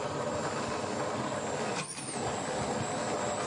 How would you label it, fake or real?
real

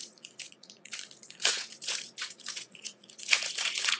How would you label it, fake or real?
fake